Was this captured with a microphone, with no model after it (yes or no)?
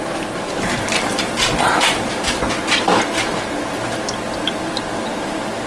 no